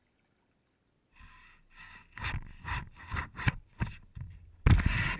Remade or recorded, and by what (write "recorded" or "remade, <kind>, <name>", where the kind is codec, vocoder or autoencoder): recorded